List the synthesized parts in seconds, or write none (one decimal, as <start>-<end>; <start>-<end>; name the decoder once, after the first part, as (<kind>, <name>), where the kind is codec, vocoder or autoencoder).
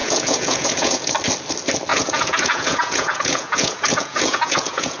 0.0-1.1 (vocoder, Vocos); 1.9-5.0